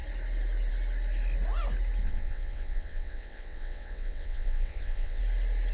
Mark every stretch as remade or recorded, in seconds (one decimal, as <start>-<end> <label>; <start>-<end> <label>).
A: 0.0-2.0 recorded; 2.0-5.2 remade; 5.2-5.7 recorded